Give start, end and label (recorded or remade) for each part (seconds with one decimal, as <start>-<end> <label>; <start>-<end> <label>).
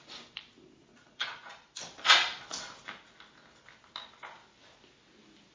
0.0-0.9 recorded; 0.9-1.7 remade; 1.7-5.5 recorded